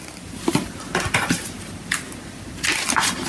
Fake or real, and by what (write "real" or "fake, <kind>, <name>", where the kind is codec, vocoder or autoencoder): real